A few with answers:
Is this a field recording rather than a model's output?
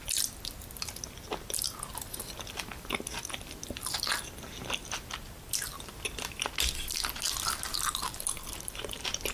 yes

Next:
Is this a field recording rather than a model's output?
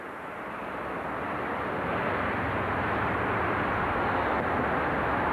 yes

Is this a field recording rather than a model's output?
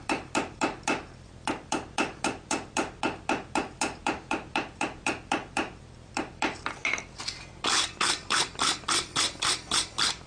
no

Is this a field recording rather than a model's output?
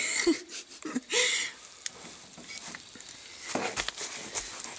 yes